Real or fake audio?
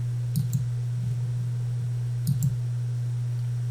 real